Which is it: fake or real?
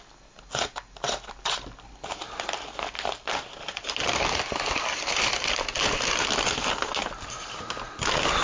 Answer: real